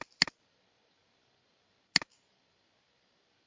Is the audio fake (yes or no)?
no